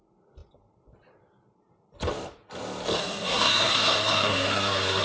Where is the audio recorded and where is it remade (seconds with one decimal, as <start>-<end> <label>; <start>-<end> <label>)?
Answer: 0.0-3.0 recorded; 3.0-5.0 remade